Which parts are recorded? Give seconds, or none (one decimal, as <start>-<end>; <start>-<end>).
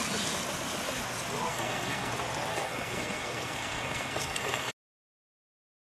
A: 0.0-1.5; 2.1-2.5; 4.7-6.0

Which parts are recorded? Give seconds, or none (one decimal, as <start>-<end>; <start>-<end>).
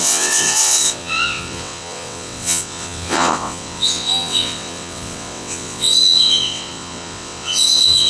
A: none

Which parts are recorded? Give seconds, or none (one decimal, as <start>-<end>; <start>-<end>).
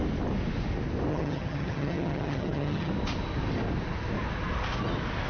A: 0.0-1.1; 2.9-5.3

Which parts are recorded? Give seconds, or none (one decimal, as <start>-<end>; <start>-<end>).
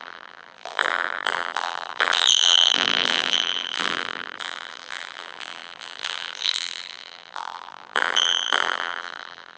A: none